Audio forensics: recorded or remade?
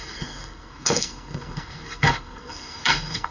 remade